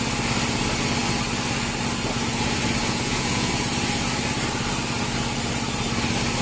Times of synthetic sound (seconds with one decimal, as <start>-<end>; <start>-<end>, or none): 2.8-3.5